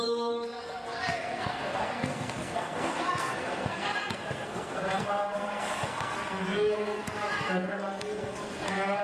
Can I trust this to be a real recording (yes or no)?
no